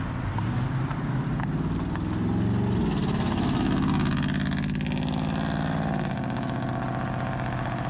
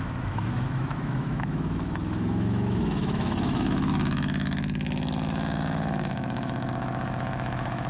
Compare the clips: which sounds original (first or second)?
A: first